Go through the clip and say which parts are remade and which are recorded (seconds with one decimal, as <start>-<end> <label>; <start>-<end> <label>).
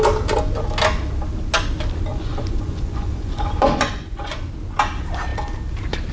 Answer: 0.0-2.1 recorded; 2.1-4.5 remade; 4.5-6.1 recorded